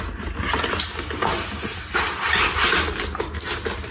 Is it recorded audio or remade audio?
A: recorded